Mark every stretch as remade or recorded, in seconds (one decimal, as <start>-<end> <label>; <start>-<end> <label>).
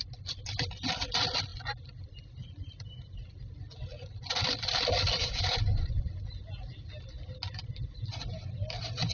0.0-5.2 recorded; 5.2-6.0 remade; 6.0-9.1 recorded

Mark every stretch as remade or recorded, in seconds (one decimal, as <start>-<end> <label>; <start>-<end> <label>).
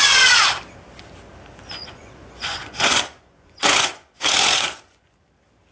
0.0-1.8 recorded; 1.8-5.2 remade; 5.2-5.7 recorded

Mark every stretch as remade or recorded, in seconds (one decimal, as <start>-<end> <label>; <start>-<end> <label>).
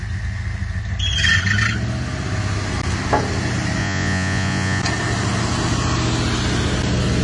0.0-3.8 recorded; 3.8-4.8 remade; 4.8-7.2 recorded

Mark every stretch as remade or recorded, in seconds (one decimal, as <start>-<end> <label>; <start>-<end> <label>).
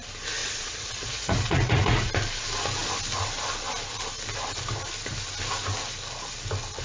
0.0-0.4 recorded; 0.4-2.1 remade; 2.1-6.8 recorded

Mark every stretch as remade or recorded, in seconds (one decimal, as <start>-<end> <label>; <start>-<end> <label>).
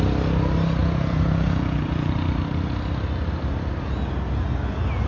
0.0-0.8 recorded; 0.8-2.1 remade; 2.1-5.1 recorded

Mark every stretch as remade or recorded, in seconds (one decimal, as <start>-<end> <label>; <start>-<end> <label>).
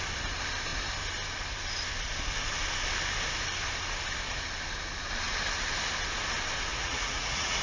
0.0-6.7 recorded; 6.7-7.6 remade